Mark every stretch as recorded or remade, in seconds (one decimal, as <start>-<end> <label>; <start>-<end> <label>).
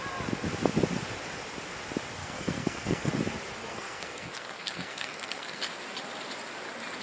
0.0-2.2 recorded; 2.2-3.1 remade; 3.1-3.6 recorded; 3.6-5.6 remade; 5.6-7.0 recorded